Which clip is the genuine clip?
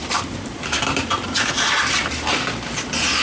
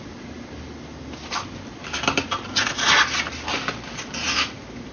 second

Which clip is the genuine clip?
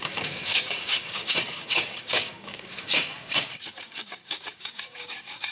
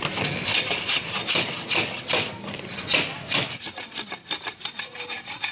second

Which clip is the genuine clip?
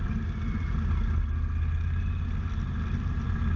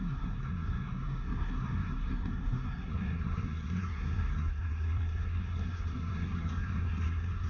first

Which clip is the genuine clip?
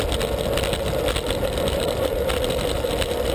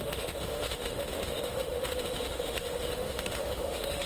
first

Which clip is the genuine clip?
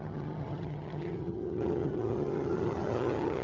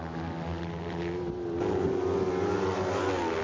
second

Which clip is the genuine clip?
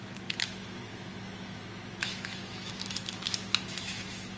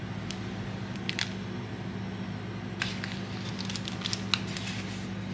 second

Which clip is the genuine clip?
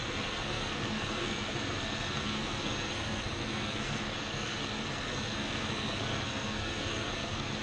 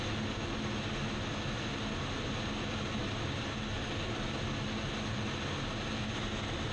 second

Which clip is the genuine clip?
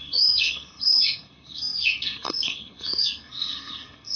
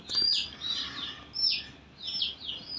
second